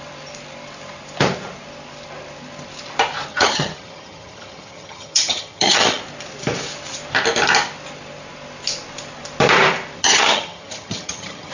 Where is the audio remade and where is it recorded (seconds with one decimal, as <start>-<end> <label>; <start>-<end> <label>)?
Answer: 0.0-3.3 recorded; 3.3-6.0 remade; 6.0-10.0 recorded; 10.0-11.5 remade